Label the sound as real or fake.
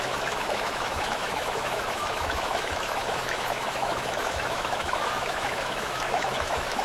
fake